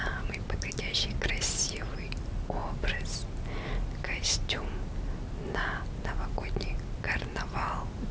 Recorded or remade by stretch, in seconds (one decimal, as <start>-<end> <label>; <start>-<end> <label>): 0.0-8.1 recorded